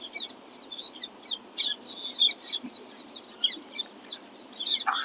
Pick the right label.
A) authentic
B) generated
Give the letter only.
A